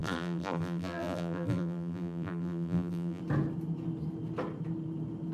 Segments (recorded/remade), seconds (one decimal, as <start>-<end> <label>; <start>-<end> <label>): 0.0-3.2 remade; 3.2-5.3 recorded